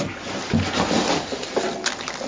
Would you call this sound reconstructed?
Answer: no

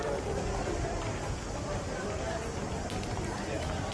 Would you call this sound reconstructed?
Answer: no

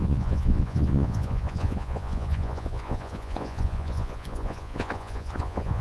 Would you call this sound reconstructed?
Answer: yes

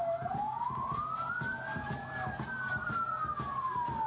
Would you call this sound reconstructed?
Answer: no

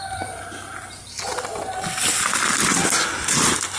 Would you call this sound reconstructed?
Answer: no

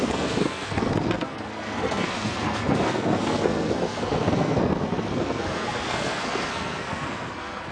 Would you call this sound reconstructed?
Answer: yes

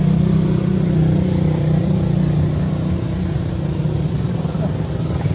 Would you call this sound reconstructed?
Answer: yes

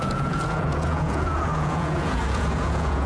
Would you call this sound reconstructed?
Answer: yes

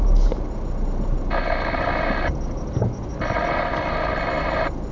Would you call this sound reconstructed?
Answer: no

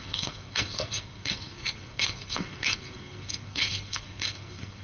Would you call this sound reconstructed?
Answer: yes